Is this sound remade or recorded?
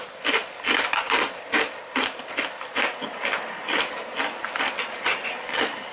recorded